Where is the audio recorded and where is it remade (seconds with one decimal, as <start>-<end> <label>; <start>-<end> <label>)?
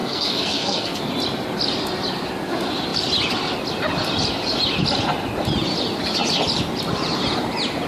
0.0-1.0 remade; 1.0-7.9 recorded